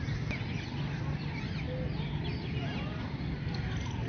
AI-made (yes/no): no